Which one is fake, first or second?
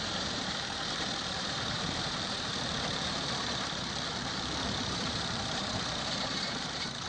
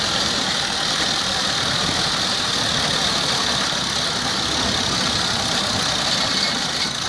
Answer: first